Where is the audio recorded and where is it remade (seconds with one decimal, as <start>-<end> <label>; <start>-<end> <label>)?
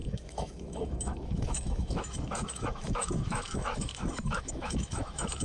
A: 0.0-5.4 remade